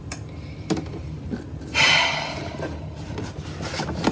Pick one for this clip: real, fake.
real